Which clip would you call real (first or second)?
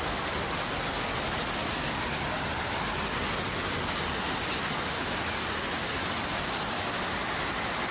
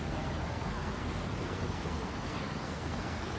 first